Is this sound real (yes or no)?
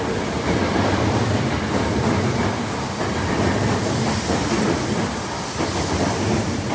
yes